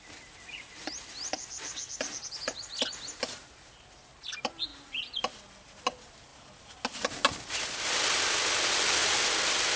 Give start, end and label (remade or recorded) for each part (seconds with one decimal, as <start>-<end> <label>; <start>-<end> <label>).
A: 0.0-9.8 recorded